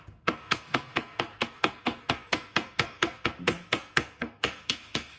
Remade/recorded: remade